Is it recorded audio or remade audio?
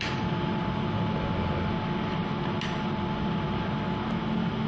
recorded